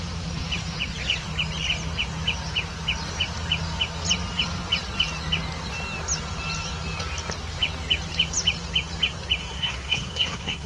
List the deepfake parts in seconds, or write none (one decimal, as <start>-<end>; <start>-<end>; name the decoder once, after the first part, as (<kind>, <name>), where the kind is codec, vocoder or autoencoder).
9.4-10.7 (codec, SNAC)